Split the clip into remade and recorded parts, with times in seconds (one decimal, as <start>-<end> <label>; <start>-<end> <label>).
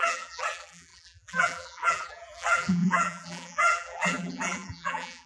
0.0-5.3 remade